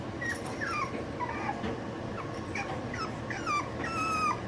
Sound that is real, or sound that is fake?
real